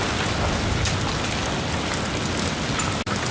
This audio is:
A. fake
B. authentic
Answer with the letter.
B